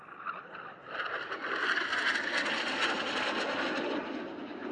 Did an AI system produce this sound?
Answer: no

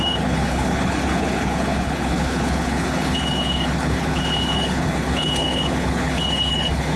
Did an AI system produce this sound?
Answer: yes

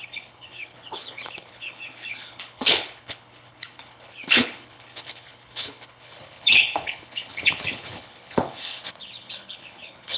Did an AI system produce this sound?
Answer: yes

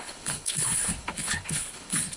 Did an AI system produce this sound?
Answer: yes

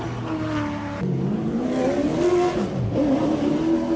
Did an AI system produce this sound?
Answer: no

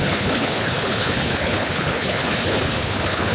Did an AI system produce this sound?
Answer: yes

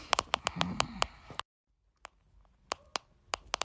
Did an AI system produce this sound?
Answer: no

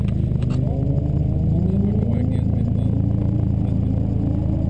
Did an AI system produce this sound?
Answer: no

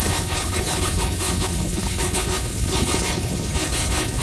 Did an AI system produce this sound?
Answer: yes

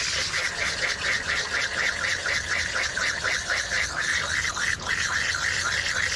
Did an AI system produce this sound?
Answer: no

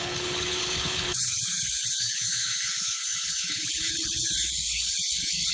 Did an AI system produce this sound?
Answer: yes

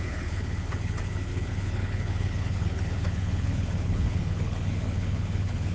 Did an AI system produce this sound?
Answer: yes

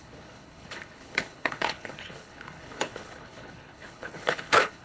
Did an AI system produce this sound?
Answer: yes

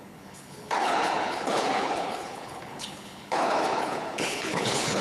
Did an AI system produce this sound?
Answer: yes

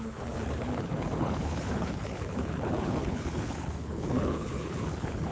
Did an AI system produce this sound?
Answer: yes